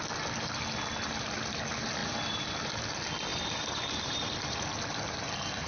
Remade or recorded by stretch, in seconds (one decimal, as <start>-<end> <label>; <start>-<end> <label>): 0.0-2.0 recorded; 2.0-2.8 remade; 2.8-3.3 recorded; 3.3-4.3 remade; 4.3-5.7 recorded